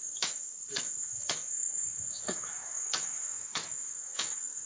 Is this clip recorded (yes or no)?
no